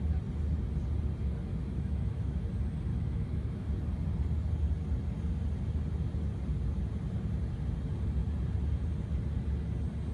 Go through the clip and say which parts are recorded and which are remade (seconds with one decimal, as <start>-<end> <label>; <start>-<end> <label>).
0.0-1.5 recorded; 1.5-2.4 remade; 2.4-2.9 recorded; 2.9-3.7 remade; 3.7-10.1 recorded